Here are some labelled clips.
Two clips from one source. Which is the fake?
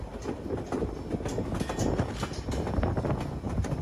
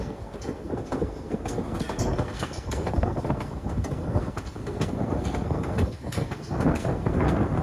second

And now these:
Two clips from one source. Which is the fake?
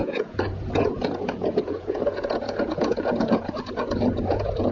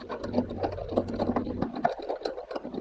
first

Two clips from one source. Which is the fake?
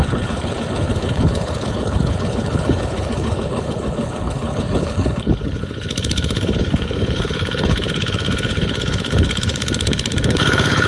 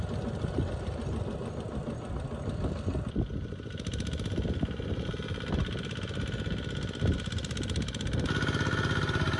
first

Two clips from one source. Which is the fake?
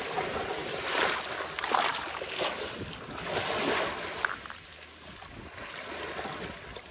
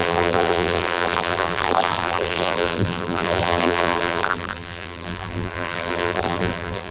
second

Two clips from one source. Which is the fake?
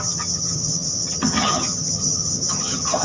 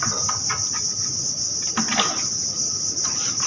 first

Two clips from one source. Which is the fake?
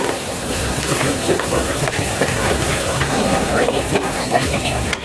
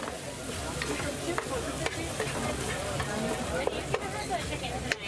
first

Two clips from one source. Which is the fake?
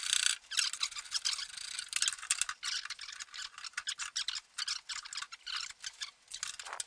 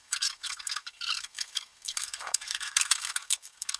second